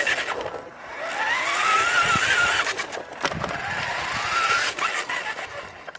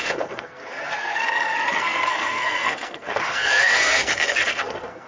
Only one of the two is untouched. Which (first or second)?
first